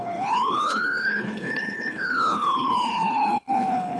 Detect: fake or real fake